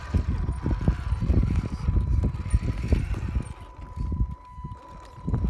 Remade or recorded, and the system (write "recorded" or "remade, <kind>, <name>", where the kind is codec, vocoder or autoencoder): recorded